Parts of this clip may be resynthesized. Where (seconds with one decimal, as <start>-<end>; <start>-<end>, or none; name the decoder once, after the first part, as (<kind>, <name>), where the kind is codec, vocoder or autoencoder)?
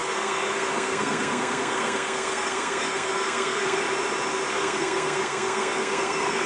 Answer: 0.0-3.8 (codec, SNAC); 4.5-6.5